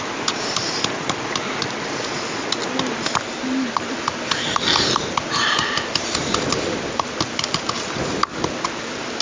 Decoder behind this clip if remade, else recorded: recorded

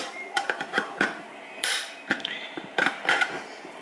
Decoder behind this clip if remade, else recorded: remade, vocoder, BigVGAN v2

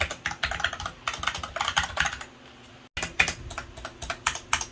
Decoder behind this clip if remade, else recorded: recorded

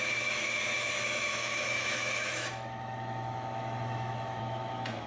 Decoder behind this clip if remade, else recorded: remade, autoencoder, DAC-VAE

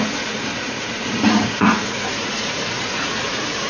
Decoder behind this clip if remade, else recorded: remade, vocoder, Vocos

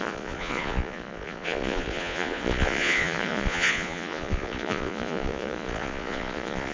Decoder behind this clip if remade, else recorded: remade, vocoder, Vocos